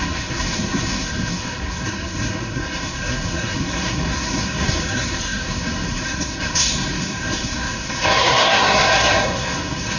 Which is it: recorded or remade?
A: remade